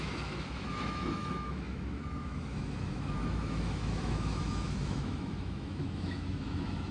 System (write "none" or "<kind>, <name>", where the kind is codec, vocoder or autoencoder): autoencoder, DAC-VAE